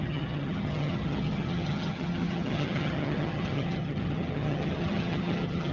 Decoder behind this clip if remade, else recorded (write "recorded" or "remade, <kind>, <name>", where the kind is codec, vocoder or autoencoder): remade, vocoder, HiFi-GAN